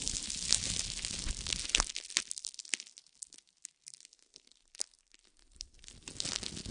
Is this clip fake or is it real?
real